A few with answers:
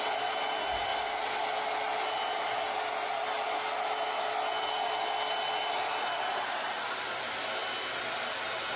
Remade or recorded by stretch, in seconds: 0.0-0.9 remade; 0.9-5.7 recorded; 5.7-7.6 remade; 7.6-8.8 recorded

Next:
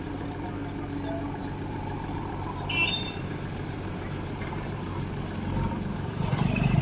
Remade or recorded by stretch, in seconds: 0.0-0.6 remade; 0.6-1.4 recorded; 1.4-4.9 remade; 4.9-5.7 recorded; 5.7-6.8 remade

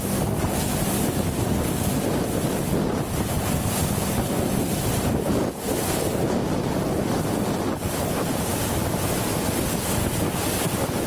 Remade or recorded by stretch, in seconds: 0.0-3.8 recorded; 3.8-4.3 remade; 4.3-6.4 recorded; 6.4-7.7 remade; 7.7-8.5 recorded; 8.5-9.1 remade; 9.1-11.1 recorded

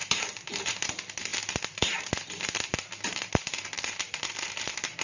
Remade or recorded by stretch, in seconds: 0.0-5.0 remade